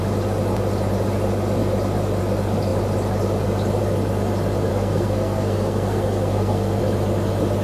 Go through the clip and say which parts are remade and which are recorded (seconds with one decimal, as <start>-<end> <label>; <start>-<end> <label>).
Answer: 0.0-4.7 recorded; 4.7-6.8 remade; 6.8-7.6 recorded